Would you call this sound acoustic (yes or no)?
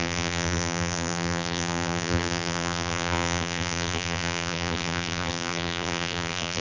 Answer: no